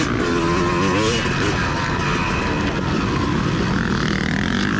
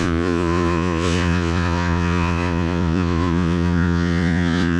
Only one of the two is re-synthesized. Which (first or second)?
second